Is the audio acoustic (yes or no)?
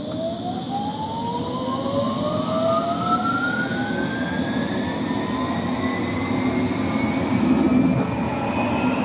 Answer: yes